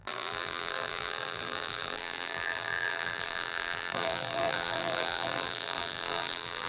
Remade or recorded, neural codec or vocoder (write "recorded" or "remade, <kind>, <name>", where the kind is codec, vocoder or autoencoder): remade, vocoder, BigVGAN v2